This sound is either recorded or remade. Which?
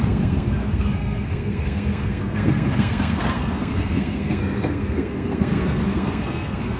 remade